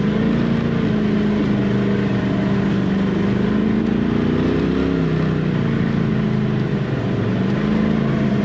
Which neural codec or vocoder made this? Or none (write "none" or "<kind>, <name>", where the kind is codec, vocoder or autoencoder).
none